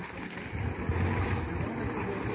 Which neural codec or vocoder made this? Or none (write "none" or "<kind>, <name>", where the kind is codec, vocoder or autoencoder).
none